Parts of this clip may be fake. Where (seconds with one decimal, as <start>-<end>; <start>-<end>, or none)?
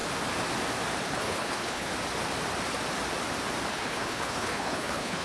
1.0-1.9; 3.7-5.2